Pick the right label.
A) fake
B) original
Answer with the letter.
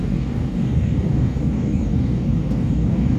A